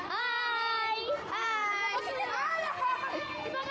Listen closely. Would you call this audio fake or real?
fake